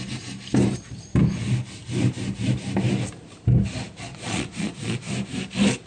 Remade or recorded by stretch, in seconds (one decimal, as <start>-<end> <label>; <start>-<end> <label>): 0.0-4.1 recorded; 4.1-5.1 remade; 5.1-5.9 recorded